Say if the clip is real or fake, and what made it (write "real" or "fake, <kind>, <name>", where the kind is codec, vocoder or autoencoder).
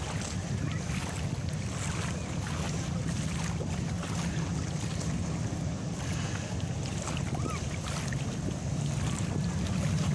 real